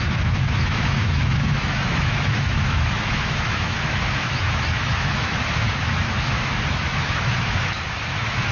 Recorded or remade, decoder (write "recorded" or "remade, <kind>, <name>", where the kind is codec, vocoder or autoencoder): remade, autoencoder, DAC-VAE